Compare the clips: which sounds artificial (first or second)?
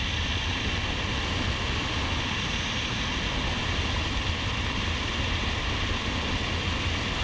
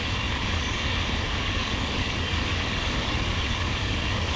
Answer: second